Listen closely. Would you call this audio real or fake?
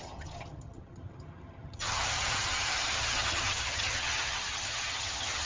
fake